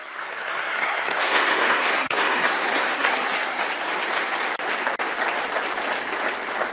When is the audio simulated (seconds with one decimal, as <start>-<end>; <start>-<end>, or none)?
0.0-3.6